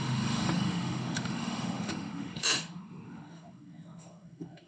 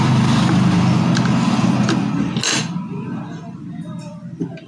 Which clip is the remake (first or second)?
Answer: first